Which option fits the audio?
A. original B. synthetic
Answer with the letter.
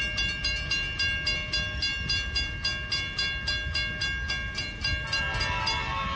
A